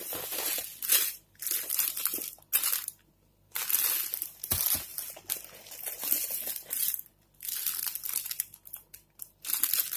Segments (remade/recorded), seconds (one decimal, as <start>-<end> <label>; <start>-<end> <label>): 0.0-10.0 recorded